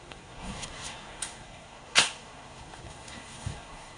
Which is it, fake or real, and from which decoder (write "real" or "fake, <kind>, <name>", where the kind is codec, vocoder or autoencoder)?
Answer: fake, codec, SNAC